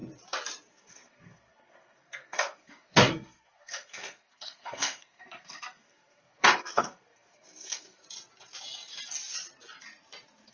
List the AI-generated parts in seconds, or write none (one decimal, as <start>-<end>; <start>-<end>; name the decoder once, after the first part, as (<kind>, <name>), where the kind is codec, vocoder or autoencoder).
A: 0.7-8.0 (codec, SNAC)